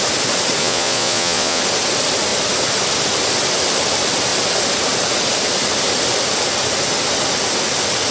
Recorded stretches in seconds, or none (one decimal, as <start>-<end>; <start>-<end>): 0.0-0.6; 1.6-8.1